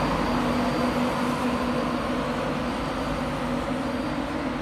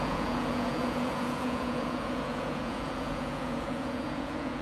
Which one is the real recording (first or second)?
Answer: first